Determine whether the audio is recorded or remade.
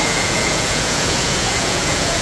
remade